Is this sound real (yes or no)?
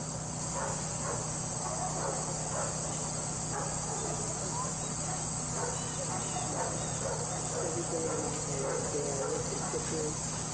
yes